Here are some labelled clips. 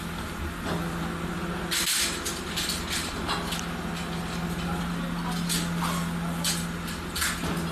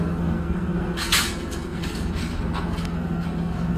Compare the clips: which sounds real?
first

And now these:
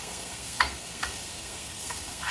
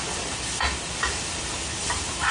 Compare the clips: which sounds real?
second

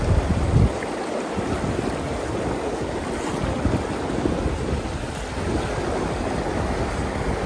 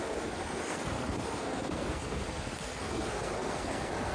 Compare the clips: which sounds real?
first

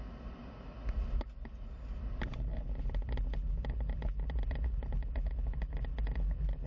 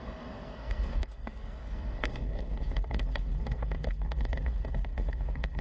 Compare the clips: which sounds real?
first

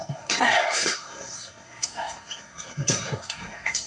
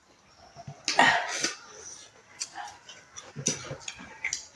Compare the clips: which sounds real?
second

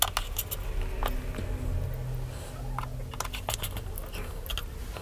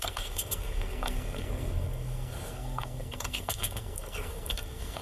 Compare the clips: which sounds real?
first